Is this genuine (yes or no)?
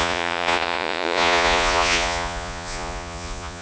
no